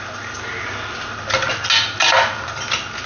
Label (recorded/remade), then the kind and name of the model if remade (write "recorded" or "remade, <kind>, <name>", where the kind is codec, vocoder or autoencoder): recorded